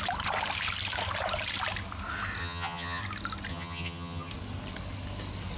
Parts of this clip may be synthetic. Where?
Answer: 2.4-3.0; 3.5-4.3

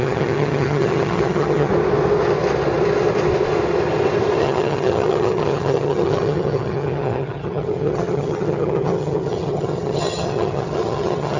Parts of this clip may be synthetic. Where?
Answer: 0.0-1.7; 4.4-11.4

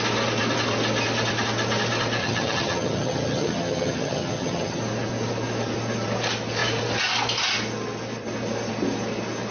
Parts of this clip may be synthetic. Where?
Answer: 2.2-4.8

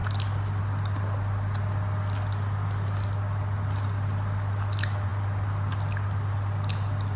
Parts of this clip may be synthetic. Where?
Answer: none